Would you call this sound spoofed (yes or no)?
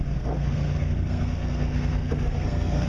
yes